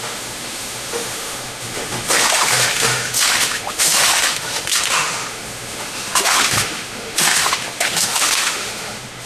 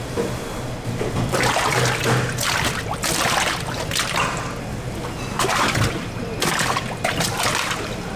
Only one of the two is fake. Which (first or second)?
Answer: first